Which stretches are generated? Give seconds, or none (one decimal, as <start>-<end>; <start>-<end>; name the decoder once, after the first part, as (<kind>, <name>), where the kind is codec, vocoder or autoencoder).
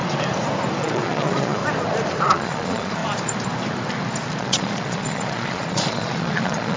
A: 0.8-1.6 (vocoder, Vocos); 2.2-3.0; 4.4-6.8